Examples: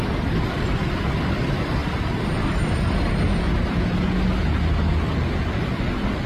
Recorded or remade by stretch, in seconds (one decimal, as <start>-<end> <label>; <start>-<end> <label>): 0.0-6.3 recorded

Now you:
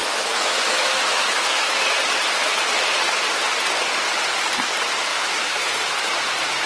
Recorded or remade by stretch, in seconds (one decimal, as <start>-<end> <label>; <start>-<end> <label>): 0.0-2.0 remade; 2.0-5.1 recorded; 5.1-6.1 remade; 6.1-6.7 recorded

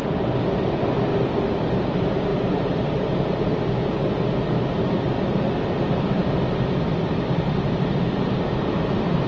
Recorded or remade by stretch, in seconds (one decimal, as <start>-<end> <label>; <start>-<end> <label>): 0.0-1.1 recorded; 1.1-1.7 remade; 1.7-9.3 recorded

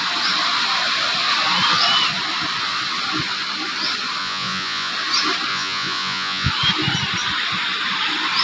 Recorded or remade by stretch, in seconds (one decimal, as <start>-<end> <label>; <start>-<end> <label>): 0.0-4.2 recorded; 4.2-4.9 remade; 4.9-5.5 recorded; 5.5-6.5 remade; 6.5-8.4 recorded

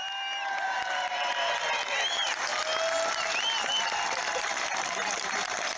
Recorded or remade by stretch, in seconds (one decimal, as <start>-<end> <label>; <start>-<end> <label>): 0.0-0.8 recorded; 0.8-2.5 remade; 2.5-3.8 recorded; 3.8-5.8 remade